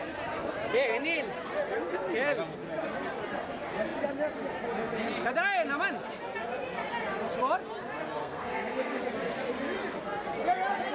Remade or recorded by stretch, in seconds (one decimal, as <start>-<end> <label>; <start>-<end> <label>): 0.0-8.2 recorded; 8.2-9.0 remade; 9.0-10.9 recorded